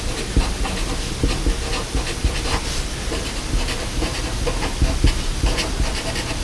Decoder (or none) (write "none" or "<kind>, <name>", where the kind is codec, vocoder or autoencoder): none